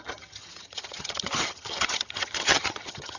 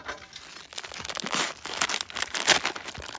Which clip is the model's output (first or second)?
first